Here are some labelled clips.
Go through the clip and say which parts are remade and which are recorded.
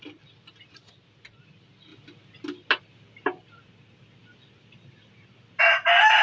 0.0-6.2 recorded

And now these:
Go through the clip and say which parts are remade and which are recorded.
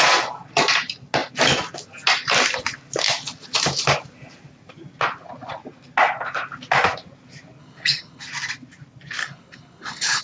0.0-7.6 recorded; 7.6-8.2 remade; 8.2-9.2 recorded; 9.2-10.2 remade